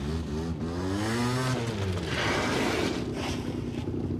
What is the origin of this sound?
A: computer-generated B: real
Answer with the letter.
B